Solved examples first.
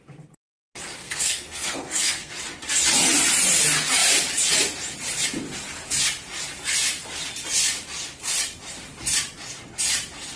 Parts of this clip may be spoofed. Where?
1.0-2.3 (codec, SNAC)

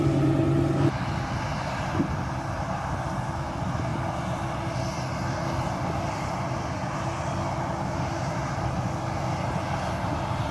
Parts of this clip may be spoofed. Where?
none